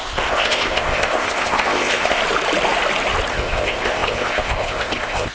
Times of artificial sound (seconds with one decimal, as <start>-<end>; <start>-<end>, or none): 0.0-2.2; 3.3-5.3